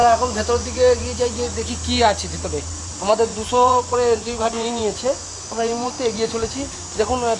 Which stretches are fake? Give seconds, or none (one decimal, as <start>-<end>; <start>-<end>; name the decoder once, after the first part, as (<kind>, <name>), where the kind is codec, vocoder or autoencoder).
3.3-5.9 (vocoder, Vocos)